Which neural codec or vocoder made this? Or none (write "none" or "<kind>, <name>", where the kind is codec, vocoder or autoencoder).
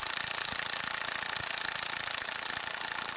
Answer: none